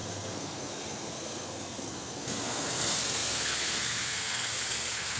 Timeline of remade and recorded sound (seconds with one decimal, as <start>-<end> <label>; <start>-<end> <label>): 0.0-5.2 remade